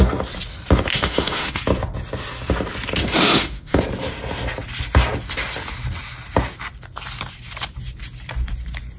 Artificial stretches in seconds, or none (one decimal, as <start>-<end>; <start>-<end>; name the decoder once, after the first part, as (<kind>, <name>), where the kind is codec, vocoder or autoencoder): 0.9-1.6 (autoencoder, DAC-VAE); 3.0-3.8